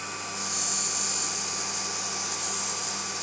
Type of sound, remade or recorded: recorded